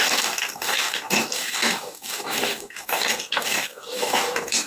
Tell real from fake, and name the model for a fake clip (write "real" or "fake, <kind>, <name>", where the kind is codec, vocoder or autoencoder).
fake, codec, DAC